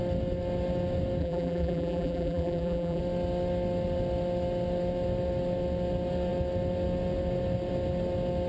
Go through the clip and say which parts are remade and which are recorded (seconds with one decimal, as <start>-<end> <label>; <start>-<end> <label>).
0.0-1.2 recorded; 1.2-3.0 remade; 3.0-8.5 recorded